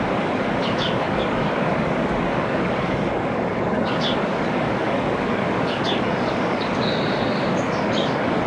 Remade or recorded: remade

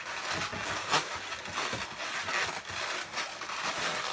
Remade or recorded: recorded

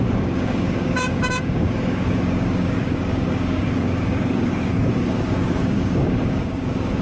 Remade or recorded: remade